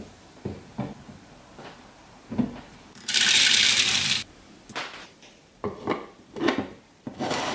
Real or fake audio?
fake